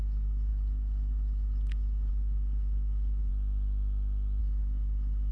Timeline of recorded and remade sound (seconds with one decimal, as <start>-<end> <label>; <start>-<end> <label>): 0.0-3.3 remade; 3.3-4.4 recorded; 4.4-5.3 remade